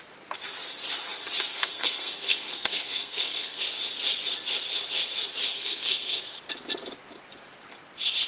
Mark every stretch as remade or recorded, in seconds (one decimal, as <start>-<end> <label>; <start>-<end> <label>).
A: 0.0-1.5 recorded; 1.5-3.6 remade; 3.6-5.5 recorded; 5.5-6.2 remade; 6.2-8.3 recorded